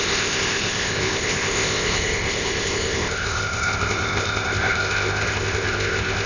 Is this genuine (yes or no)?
no